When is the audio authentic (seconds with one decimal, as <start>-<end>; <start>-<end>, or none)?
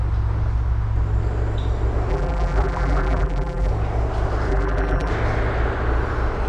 0.0-2.1; 3.7-4.5; 5.1-6.5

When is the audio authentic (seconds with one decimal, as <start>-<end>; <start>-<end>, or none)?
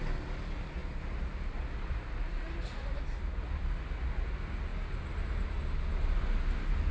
0.0-0.8; 3.4-6.9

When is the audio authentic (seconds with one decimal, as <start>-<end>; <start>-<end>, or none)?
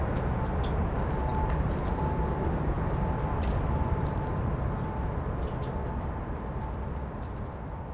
0.0-7.9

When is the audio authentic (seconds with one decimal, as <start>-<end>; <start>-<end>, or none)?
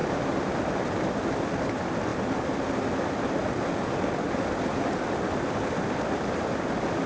0.6-7.1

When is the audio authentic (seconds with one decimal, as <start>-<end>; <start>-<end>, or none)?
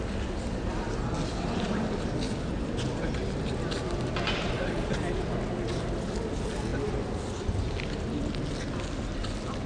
0.0-9.7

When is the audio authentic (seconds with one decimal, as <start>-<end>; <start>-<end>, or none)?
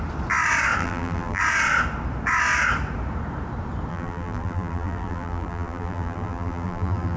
0.0-0.8; 1.4-3.9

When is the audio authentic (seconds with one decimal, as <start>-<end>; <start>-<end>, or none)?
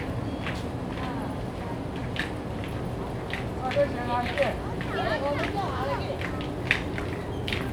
0.0-4.3; 5.8-7.7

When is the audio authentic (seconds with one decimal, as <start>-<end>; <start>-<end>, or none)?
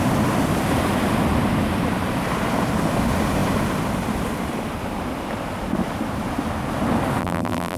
0.0-7.2